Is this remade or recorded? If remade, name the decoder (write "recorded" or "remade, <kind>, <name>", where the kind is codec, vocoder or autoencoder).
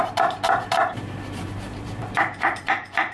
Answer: remade, vocoder, BigVGAN v2